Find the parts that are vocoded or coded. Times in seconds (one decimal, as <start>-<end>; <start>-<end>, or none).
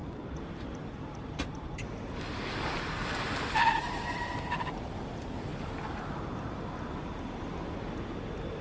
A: 0.0-0.7; 3.0-3.6